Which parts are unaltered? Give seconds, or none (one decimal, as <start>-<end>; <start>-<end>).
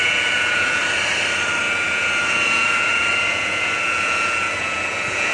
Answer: 0.8-1.6